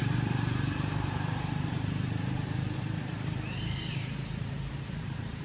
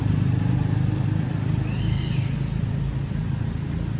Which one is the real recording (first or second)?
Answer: second